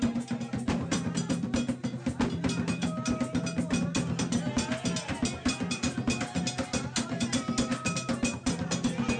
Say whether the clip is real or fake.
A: real